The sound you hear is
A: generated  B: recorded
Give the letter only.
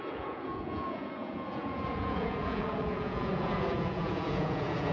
A